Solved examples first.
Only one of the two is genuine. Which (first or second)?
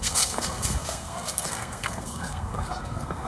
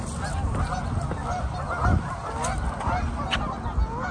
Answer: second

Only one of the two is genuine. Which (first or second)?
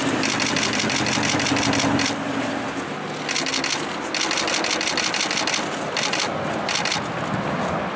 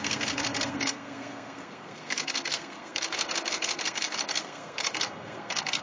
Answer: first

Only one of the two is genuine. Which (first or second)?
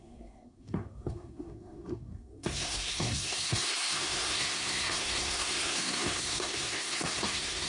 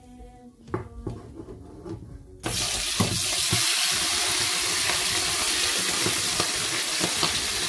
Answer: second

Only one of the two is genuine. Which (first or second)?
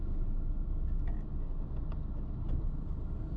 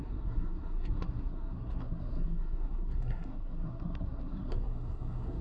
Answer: first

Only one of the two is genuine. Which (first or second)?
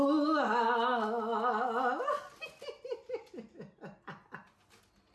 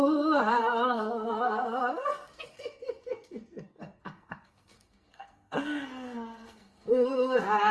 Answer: first